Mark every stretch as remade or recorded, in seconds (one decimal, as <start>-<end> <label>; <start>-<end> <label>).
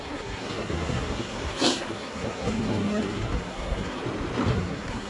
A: 0.0-4.0 remade; 4.0-4.5 recorded; 4.5-5.1 remade